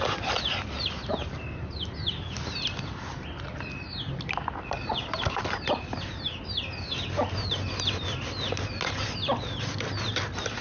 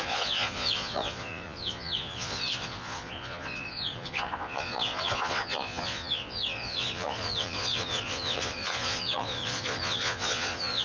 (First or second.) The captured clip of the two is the first